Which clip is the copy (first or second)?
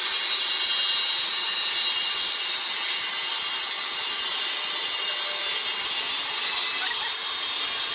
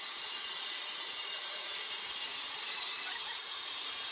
second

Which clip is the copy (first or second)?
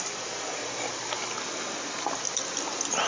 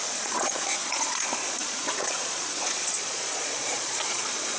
second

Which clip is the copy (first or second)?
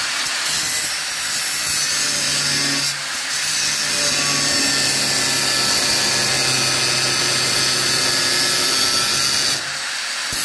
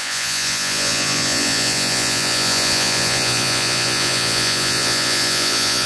second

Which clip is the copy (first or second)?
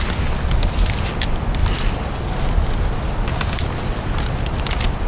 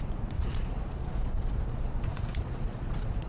second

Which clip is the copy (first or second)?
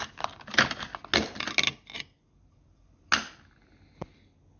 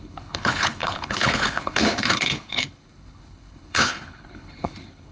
second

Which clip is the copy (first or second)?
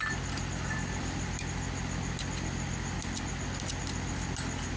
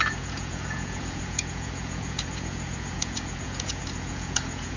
second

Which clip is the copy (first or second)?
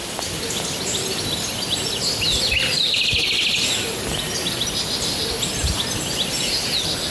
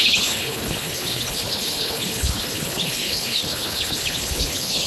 second